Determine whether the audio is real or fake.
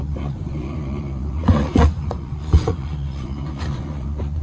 fake